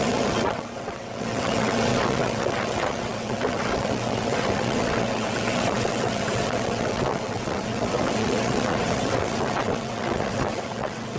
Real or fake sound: fake